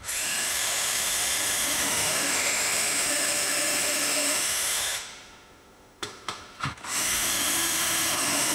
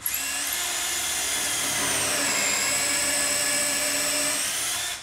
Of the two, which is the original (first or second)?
second